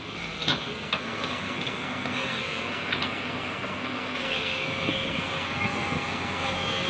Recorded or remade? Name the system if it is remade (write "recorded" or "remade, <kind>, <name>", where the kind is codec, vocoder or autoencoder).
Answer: remade, codec, SNAC